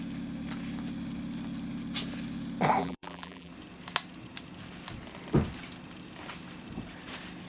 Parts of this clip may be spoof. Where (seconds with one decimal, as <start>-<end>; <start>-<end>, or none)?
2.8-3.5